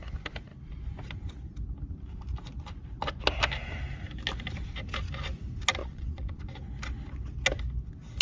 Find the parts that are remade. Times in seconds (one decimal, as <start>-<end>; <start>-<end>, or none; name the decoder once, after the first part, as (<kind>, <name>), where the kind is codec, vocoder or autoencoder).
5.8-6.4 (vocoder, Vocos)